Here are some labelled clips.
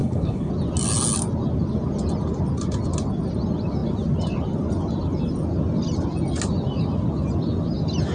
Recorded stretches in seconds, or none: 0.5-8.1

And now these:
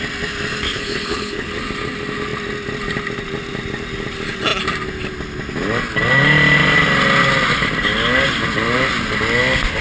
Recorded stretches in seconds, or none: 0.0-0.7; 1.5-9.8

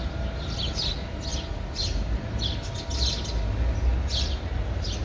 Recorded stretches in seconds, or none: 0.0-5.0

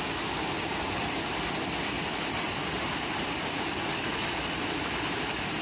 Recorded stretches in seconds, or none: 0.0-5.6

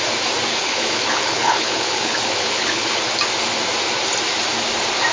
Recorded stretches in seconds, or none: 0.0-0.5; 3.0-5.1

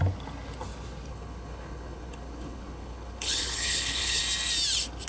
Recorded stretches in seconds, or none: 0.0-1.1; 4.2-5.1